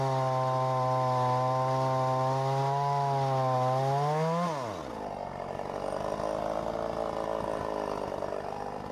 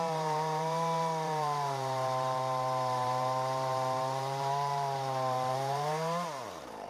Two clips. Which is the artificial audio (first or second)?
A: second